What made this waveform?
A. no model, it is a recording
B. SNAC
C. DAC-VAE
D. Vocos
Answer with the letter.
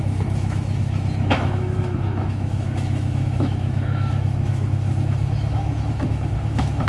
C